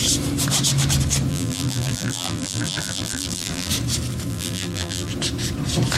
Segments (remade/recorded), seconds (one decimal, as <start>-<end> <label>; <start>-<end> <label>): 0.0-1.3 recorded; 1.3-3.7 remade; 3.7-4.3 recorded; 4.3-5.1 remade; 5.1-6.0 recorded